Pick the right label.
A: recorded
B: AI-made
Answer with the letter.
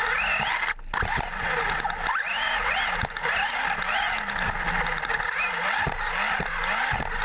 A